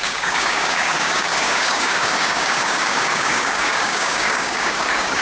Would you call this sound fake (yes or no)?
yes